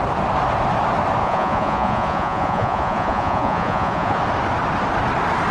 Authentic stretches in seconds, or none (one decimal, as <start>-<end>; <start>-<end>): 0.0-1.2; 4.2-5.5